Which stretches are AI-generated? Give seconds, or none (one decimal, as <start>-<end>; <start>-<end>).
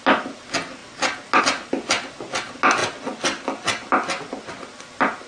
none